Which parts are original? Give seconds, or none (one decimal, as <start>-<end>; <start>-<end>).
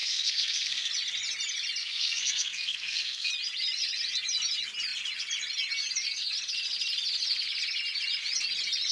0.9-1.8; 3.3-8.9